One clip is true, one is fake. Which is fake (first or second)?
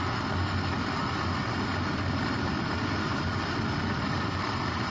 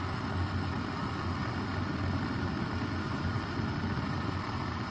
first